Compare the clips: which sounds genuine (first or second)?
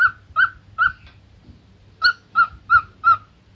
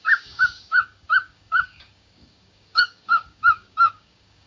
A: first